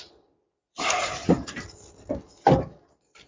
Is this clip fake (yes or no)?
no